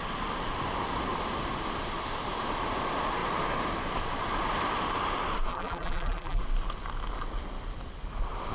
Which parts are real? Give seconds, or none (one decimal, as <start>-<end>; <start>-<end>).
0.0-5.5; 6.4-8.5